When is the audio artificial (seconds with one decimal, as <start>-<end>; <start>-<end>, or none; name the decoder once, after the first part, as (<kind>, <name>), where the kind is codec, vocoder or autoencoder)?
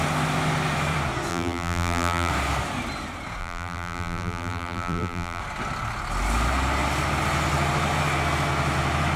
1.3-2.3 (vocoder, BigVGAN v2); 3.4-5.4